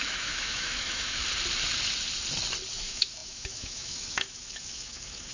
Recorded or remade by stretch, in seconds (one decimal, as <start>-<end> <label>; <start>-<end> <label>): 0.0-1.2 remade; 1.2-2.7 recorded; 2.7-5.3 remade